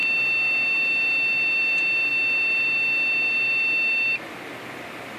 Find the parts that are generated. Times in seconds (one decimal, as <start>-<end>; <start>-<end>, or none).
none